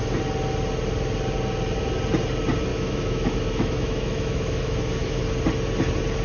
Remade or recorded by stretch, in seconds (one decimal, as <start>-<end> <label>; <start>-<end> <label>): 0.0-2.7 recorded; 2.7-5.2 remade; 5.2-6.2 recorded